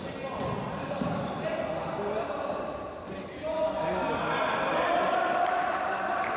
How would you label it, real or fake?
real